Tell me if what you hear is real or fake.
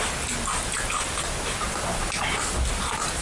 real